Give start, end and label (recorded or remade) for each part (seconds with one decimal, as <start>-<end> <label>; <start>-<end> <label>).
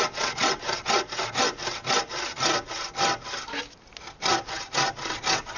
0.0-5.6 recorded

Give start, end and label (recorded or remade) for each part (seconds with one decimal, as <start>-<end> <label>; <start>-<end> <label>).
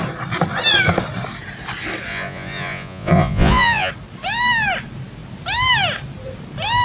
0.0-2.1 recorded; 2.1-3.9 remade; 3.9-6.8 recorded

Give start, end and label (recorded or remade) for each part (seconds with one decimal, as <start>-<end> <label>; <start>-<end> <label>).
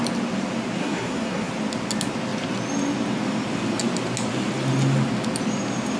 0.0-0.8 recorded; 0.8-1.5 remade; 1.5-6.0 recorded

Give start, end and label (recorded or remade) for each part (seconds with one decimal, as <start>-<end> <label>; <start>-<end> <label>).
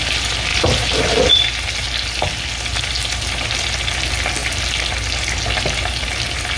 0.0-6.6 recorded